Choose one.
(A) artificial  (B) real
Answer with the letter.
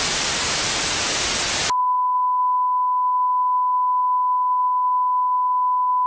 B